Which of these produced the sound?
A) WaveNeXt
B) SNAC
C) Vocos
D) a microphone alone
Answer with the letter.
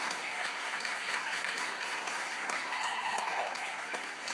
B